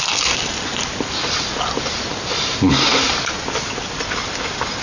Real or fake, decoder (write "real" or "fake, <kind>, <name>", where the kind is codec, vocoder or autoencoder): real